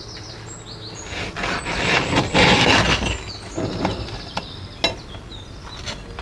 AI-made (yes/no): no